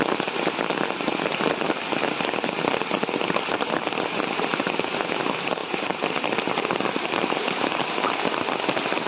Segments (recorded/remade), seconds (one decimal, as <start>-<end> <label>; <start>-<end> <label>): 0.0-5.6 recorded; 5.6-6.3 remade; 6.3-9.1 recorded